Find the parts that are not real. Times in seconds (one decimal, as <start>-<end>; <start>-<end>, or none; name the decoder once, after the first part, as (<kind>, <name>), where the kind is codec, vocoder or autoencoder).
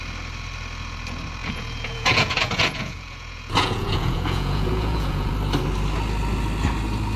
1.4-5.3 (vocoder, Vocos)